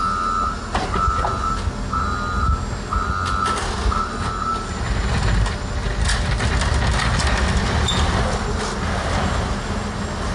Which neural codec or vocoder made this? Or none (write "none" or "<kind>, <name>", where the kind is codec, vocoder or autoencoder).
none